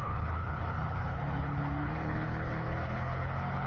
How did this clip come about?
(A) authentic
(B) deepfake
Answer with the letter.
B